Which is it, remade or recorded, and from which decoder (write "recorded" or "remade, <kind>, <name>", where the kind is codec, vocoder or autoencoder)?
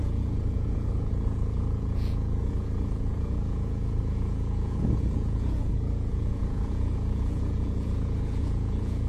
remade, vocoder, Vocos